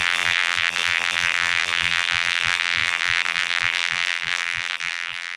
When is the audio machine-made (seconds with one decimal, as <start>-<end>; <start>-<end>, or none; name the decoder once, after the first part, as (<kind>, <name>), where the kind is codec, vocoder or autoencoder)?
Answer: 0.0-5.4 (vocoder, BigVGAN v2)